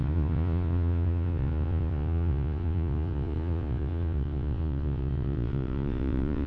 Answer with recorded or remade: remade